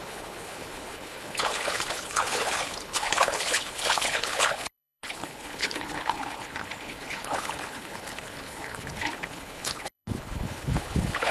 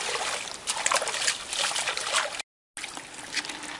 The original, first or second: second